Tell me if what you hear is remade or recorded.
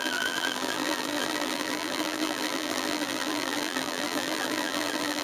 remade